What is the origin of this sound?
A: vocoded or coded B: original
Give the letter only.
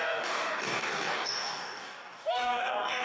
A